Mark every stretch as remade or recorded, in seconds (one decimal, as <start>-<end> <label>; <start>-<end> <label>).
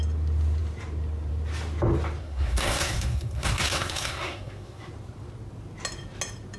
0.0-2.2 recorded; 2.2-4.9 remade; 4.9-6.6 recorded